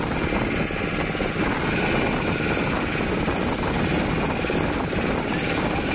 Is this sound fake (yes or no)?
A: no